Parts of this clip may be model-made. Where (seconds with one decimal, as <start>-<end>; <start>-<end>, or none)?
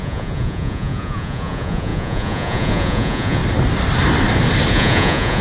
0.0-3.4; 4.7-5.4